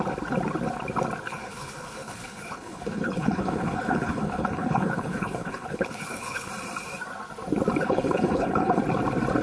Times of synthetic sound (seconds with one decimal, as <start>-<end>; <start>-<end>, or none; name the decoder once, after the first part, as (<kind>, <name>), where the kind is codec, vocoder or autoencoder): 1.3-6.5 (codec, HILCodec); 7.8-8.8